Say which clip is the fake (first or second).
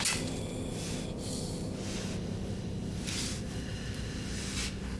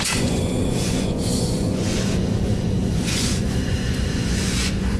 second